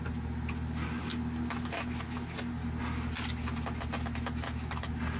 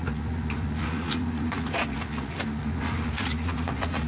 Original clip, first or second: first